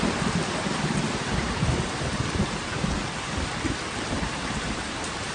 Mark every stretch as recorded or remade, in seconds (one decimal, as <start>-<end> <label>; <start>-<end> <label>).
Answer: 0.0-5.3 remade